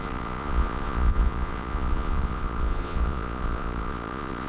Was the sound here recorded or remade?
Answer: remade